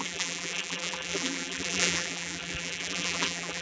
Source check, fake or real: fake